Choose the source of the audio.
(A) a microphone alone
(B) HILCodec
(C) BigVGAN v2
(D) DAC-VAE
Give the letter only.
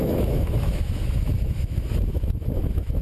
D